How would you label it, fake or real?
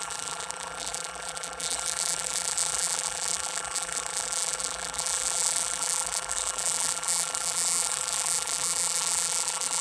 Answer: fake